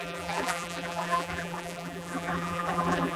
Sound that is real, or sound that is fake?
fake